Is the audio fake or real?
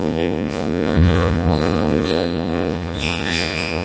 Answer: fake